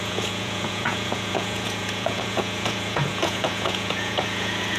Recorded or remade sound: remade